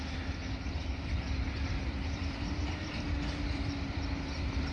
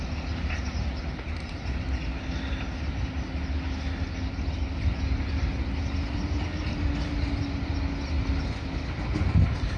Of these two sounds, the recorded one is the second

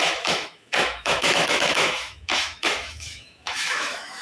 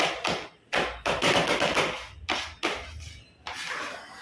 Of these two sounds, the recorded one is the second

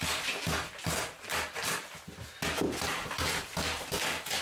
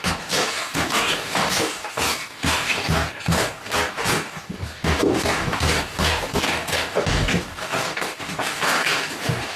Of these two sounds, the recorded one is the first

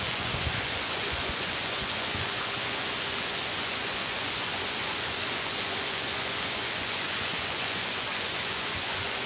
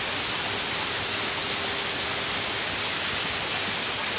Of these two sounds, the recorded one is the second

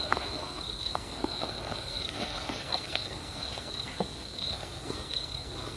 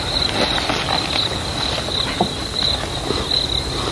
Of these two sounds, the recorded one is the second